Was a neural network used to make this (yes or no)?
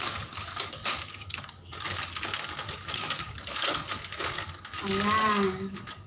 yes